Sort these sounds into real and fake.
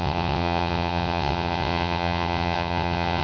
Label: fake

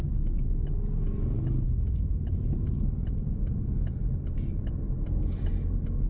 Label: real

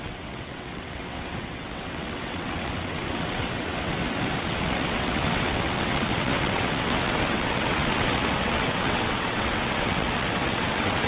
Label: fake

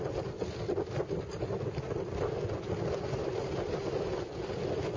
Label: real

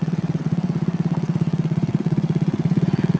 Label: fake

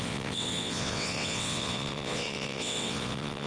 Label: fake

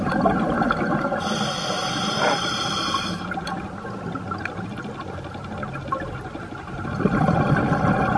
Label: real